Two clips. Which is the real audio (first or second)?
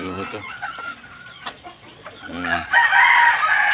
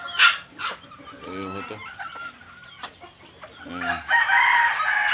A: second